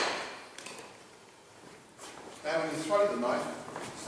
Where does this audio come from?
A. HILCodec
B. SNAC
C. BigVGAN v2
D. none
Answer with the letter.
C